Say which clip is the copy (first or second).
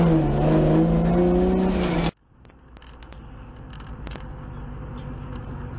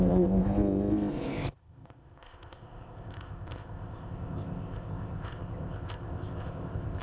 second